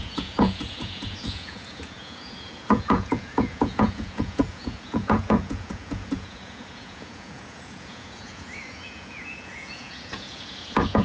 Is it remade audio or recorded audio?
remade